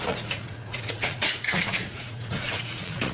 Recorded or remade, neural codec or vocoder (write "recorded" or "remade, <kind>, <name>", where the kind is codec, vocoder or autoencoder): remade, vocoder, Vocos